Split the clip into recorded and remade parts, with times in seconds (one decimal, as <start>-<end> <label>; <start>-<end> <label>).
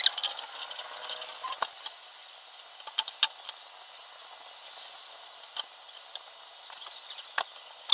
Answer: 0.0-7.9 recorded